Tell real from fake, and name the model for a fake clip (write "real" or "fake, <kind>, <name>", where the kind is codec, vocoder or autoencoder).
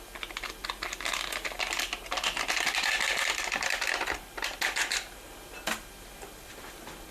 real